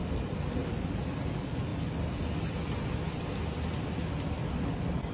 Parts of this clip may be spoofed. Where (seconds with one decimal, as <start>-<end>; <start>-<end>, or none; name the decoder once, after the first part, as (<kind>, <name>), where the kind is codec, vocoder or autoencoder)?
0.0-1.7 (vocoder, BigVGAN v2)